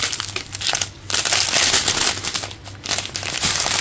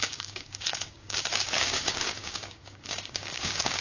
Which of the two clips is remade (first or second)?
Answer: second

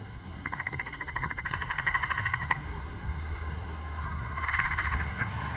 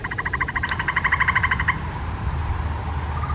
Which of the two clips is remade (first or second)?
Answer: first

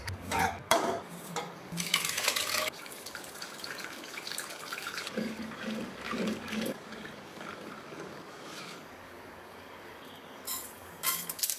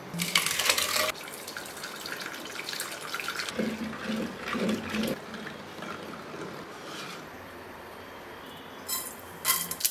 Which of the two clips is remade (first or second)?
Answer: first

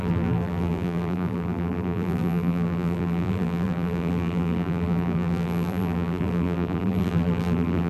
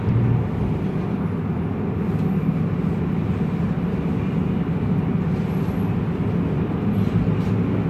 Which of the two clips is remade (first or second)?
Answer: first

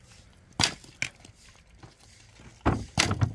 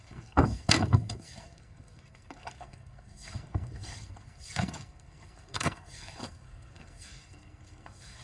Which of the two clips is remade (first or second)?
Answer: second